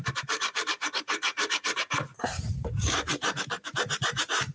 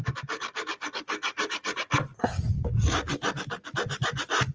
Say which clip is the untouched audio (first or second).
second